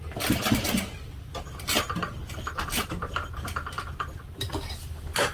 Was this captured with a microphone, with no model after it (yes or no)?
yes